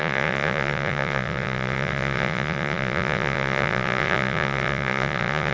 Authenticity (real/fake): fake